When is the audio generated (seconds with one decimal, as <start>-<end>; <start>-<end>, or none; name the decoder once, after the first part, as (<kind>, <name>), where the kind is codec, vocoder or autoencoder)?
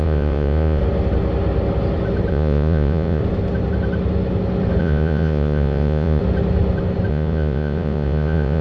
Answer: 0.0-0.8 (vocoder, Vocos); 2.3-3.2; 4.8-6.2; 7.1-8.6